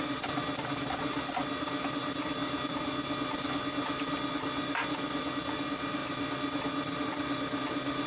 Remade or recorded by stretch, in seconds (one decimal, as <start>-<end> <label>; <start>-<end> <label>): 0.0-8.1 recorded